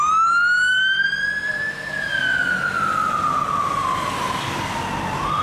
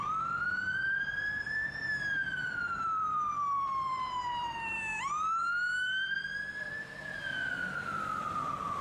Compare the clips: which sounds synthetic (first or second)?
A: second